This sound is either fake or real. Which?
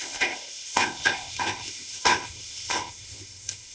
fake